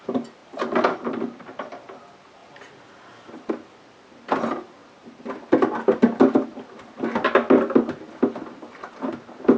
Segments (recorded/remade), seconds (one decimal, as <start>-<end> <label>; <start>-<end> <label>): 0.0-0.4 recorded; 0.4-1.9 remade; 1.9-2.4 recorded; 2.4-3.5 remade; 3.5-9.6 recorded